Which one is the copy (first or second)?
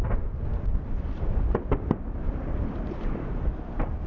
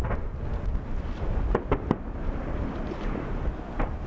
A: first